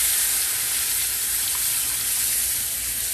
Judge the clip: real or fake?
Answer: real